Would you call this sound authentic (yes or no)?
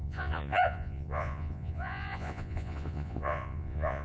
no